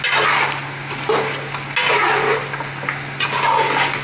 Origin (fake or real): real